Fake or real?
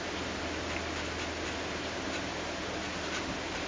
real